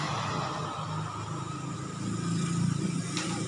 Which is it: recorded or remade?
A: recorded